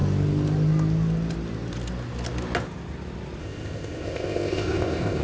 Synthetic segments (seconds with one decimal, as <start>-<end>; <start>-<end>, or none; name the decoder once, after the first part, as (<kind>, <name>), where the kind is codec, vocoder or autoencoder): 3.4-5.2 (codec, ZipCodec)

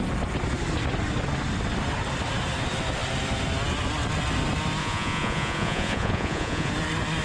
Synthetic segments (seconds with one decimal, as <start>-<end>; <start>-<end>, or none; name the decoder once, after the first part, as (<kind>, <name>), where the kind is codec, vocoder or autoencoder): 4.8-6.7 (vocoder, Vocos)

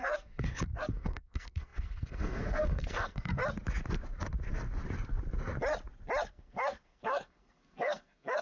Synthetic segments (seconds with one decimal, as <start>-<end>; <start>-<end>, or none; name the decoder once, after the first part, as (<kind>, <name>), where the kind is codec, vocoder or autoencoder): 0.0-3.4 (codec, SNAC); 6.3-8.4

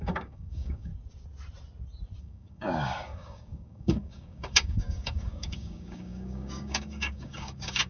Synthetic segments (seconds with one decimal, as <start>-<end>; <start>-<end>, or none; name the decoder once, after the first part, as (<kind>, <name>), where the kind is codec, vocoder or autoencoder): 0.0-0.9 (codec, DAC); 2.2-7.9

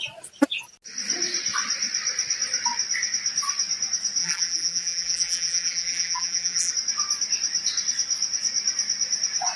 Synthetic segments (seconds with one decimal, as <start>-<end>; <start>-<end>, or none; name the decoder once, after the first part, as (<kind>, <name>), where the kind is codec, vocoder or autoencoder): 4.2-6.7 (vocoder, BigVGAN v2)